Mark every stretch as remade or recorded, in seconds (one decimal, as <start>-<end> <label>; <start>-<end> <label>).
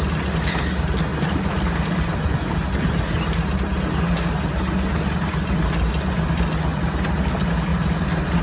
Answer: 0.0-7.7 recorded; 7.7-8.4 remade